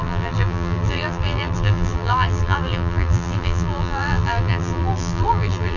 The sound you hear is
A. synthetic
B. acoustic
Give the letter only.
A